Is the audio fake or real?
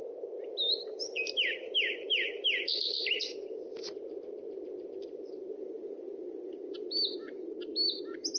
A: real